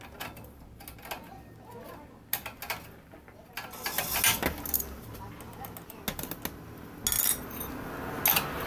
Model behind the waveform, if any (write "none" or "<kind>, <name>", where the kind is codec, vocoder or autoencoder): none